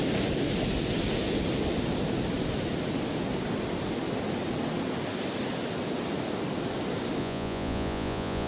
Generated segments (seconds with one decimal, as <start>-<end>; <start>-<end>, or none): 7.2-8.5